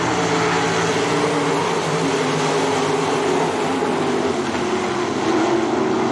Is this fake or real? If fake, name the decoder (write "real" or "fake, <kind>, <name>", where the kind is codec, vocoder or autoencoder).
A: real